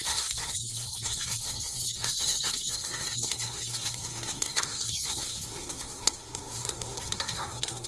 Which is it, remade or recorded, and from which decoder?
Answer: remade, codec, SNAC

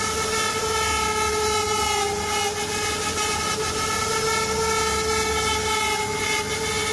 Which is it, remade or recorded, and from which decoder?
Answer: recorded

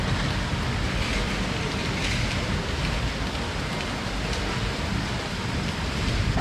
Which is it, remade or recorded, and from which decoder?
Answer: recorded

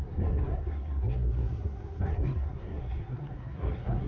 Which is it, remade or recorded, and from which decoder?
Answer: remade, codec, SNAC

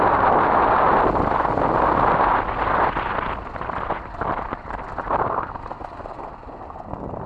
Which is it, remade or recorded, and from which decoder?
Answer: recorded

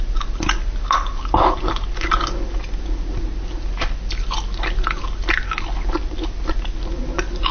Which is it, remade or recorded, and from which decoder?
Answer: recorded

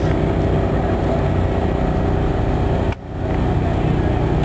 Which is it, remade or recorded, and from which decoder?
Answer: recorded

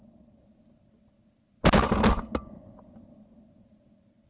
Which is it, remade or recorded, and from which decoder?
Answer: recorded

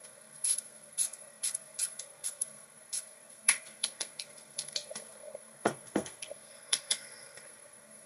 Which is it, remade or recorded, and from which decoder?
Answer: remade, codec, SNAC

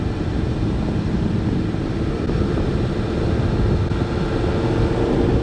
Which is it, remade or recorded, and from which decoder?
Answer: recorded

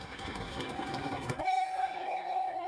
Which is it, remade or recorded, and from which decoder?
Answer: remade, codec, SNAC